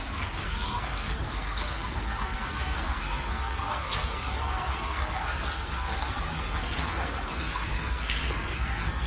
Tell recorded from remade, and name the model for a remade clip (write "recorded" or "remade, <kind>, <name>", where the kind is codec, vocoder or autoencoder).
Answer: remade, codec, SNAC